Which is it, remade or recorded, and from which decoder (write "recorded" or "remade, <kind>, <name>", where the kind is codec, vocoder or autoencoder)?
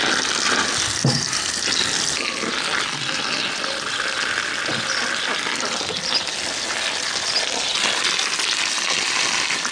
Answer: recorded